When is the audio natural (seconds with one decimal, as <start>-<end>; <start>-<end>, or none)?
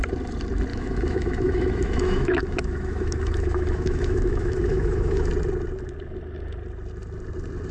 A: 0.0-0.7; 5.3-7.7